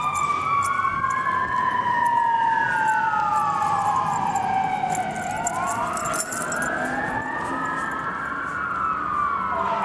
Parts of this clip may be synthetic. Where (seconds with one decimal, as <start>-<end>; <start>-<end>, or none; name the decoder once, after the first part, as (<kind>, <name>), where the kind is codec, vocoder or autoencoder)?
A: none